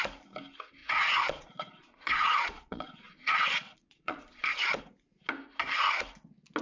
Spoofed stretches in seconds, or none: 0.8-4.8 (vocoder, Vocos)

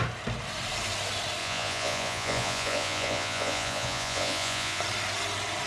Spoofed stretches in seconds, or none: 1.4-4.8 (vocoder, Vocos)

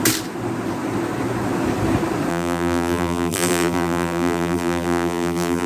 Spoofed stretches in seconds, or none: 2.3-5.7 (vocoder, BigVGAN v2)

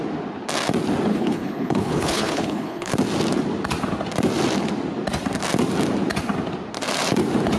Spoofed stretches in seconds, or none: 1.1-2.9 (codec, HILCodec)